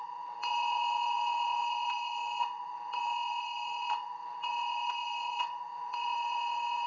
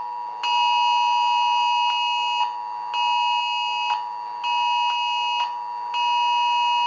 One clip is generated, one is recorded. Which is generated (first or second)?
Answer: first